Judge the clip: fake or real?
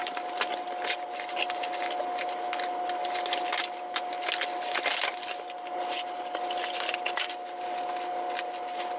real